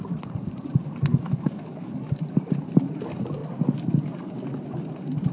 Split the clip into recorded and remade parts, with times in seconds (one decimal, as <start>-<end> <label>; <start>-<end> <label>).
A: 0.0-1.1 recorded; 1.1-1.9 remade; 1.9-5.3 recorded